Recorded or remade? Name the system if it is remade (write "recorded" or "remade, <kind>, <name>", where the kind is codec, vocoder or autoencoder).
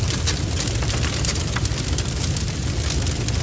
recorded